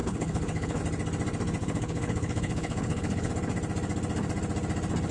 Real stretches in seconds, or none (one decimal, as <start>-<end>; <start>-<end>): 0.8-1.6; 3.3-5.1